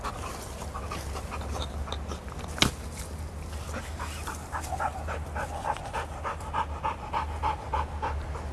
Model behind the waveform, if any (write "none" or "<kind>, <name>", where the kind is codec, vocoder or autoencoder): none